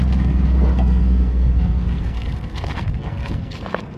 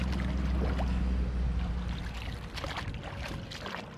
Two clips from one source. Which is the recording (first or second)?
second